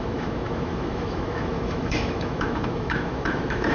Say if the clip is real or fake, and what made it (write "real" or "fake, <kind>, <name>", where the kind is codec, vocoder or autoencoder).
fake, autoencoder, DAC-VAE